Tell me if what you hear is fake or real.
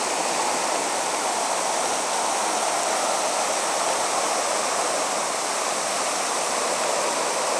real